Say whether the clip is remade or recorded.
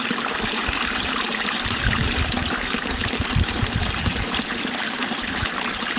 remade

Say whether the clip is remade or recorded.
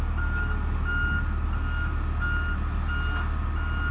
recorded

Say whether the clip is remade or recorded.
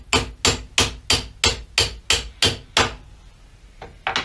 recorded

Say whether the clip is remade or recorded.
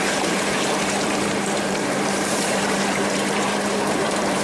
remade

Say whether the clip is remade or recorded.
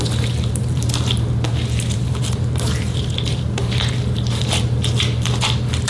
remade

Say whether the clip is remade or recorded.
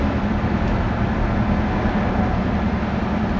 recorded